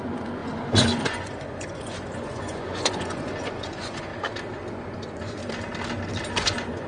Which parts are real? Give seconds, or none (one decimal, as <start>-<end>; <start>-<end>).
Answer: 4.1-4.6; 5.4-6.3

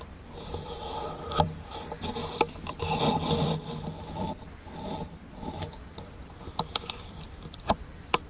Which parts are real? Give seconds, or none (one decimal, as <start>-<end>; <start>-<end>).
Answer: 2.2-6.4

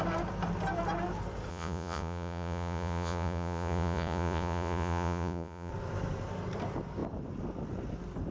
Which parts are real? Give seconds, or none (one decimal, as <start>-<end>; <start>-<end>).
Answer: 0.0-1.5; 5.7-8.3

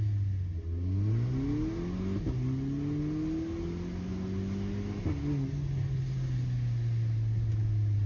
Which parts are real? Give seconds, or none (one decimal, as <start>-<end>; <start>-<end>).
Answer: 0.0-8.1

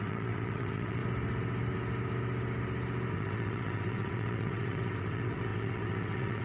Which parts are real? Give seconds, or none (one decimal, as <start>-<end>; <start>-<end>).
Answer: 1.0-3.1

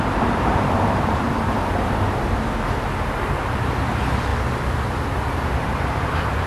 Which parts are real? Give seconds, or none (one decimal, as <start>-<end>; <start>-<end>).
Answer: 1.3-3.2; 4.3-5.1

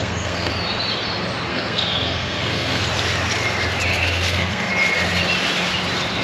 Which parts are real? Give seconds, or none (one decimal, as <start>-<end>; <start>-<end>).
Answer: 0.5-1.5; 2.8-3.9; 4.7-6.2

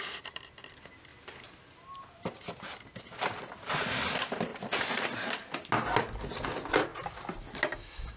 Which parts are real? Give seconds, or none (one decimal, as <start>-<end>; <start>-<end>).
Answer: 0.0-8.2